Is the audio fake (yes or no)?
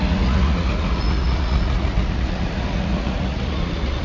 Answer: yes